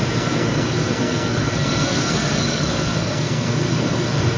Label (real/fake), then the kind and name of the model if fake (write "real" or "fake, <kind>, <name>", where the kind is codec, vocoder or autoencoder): fake, codec, SNAC